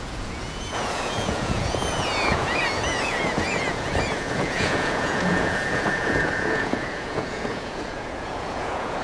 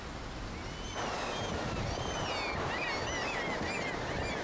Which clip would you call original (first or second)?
second